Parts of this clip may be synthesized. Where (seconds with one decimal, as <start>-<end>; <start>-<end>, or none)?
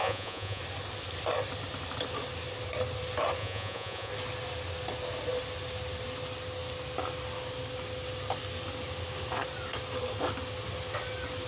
0.0-0.6; 3.4-4.1